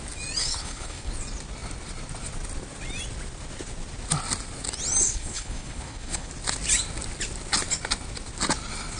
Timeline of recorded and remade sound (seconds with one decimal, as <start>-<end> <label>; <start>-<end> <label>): 0.0-0.4 recorded; 0.4-1.1 remade; 1.1-5.0 recorded; 5.0-6.3 remade; 6.3-9.0 recorded